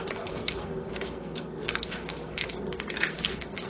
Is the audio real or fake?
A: fake